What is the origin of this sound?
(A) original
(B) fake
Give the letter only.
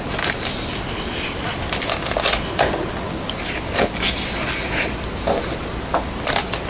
A